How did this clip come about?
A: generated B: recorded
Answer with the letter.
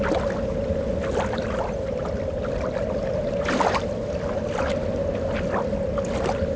B